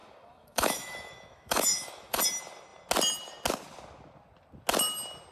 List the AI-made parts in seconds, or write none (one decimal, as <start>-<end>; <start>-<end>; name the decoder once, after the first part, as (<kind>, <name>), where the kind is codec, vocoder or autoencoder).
0.0-2.2 (autoencoder, DAC-VAE)

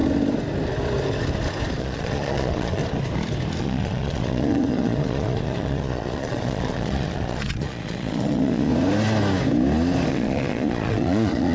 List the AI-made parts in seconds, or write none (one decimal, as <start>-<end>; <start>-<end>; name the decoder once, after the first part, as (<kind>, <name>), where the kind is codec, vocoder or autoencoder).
1.8-2.8 (vocoder, Vocos); 3.6-8.7; 10.1-11.5